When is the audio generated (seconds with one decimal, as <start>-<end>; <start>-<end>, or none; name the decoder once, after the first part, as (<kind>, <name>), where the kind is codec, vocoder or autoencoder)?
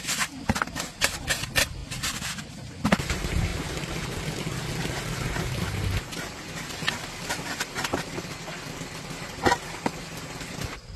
none